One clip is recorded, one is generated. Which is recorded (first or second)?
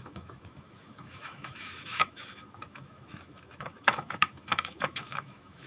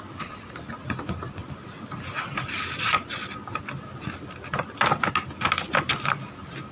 second